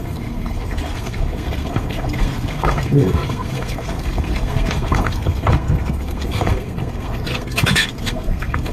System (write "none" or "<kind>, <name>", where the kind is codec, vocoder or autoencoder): codec, SNAC